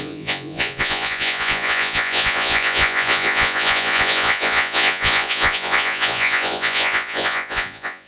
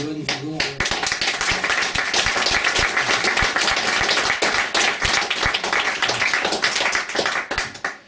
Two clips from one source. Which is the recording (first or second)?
second